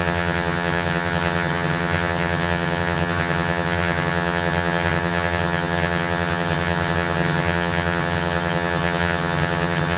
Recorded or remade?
remade